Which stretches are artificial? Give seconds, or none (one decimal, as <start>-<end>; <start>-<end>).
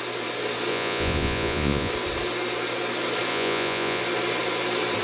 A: 0.7-1.9; 3.3-4.0